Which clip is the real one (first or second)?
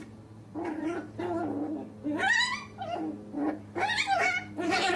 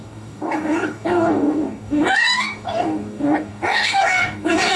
first